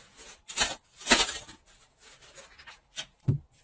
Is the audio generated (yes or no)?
no